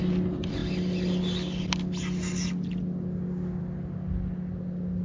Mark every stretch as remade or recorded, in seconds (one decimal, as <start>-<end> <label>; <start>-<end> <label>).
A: 0.0-5.0 recorded